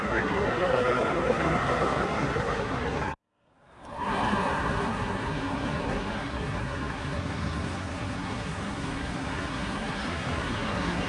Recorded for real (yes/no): no